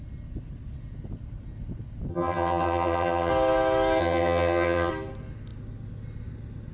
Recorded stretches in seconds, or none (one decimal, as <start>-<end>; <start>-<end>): 0.0-2.1; 3.3-4.0; 4.9-6.7